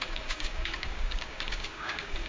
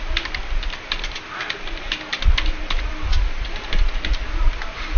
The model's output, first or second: first